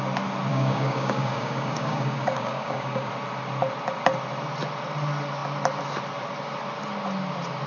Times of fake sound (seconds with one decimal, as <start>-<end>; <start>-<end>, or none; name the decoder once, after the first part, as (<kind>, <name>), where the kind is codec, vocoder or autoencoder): 0.5-3.1 (codec, DAC)